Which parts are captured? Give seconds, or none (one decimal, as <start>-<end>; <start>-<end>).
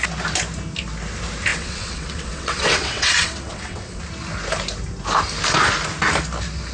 0.0-1.5; 4.0-6.7